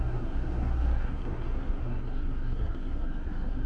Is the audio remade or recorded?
remade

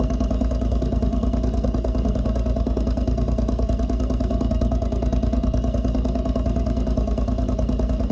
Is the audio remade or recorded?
remade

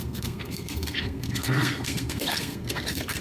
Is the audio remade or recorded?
remade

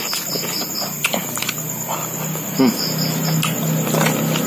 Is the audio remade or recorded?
recorded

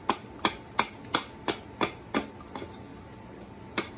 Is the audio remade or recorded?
recorded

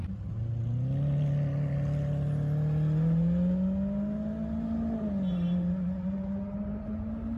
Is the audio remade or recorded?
recorded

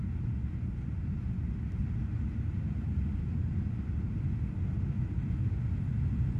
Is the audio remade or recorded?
recorded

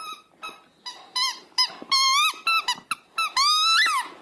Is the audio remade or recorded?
recorded